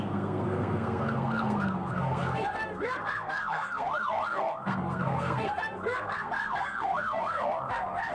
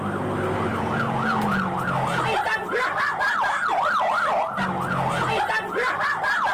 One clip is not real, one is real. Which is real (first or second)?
second